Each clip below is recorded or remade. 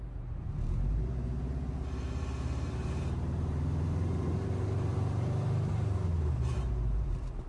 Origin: remade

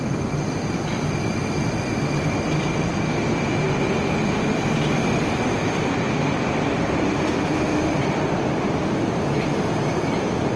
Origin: remade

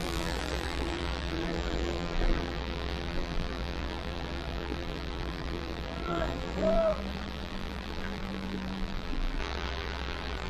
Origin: remade